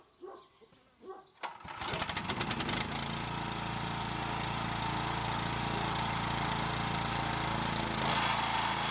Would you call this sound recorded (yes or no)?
yes